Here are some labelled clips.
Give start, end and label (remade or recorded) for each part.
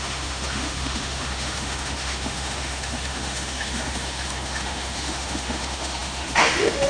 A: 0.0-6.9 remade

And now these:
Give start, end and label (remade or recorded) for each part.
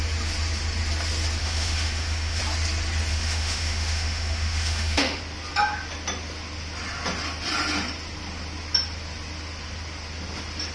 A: 0.0-1.4 recorded; 1.4-2.4 remade; 2.4-3.1 recorded; 3.1-5.2 remade; 5.2-10.7 recorded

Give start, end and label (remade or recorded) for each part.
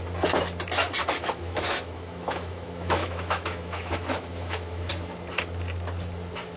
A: 0.0-1.0 recorded; 1.0-4.9 remade; 4.9-6.6 recorded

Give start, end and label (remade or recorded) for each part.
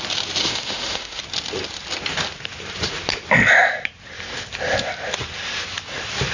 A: 0.0-0.4 recorded; 0.4-1.2 remade; 1.2-6.3 recorded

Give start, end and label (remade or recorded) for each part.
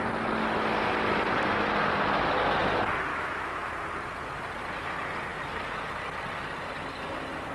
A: 0.0-3.1 recorded; 3.1-3.7 remade; 3.7-7.5 recorded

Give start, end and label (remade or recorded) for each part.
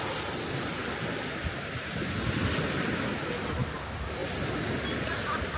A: 0.0-5.6 recorded